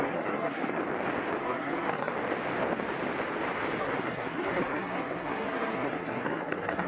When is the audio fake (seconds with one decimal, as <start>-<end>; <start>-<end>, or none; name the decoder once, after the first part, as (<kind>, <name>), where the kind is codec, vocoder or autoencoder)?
0.0-0.8 (codec, SNAC); 1.4-2.1; 3.8-6.9